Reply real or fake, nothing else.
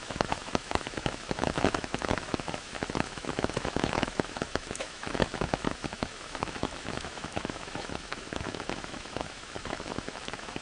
fake